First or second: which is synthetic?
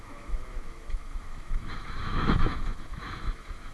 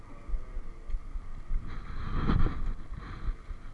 first